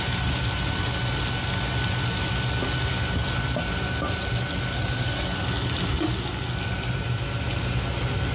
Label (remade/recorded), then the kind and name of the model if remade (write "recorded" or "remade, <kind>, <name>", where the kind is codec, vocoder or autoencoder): recorded